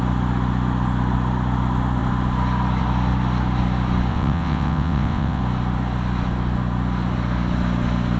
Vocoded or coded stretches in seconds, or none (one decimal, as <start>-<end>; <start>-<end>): 4.1-5.4